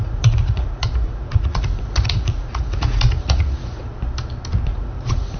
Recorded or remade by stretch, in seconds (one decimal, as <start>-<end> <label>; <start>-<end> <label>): 0.0-3.9 remade; 3.9-4.7 recorded; 4.7-5.4 remade